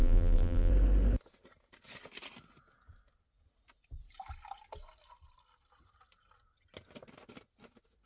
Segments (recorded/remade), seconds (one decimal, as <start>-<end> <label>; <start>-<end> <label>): 0.0-0.7 remade; 0.7-8.1 recorded